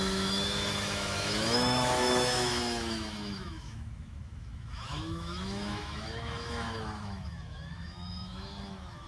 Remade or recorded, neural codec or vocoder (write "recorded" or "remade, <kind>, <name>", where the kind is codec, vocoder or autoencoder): remade, autoencoder, DAC-VAE